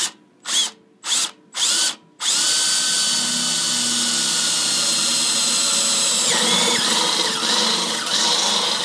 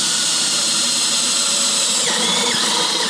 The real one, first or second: first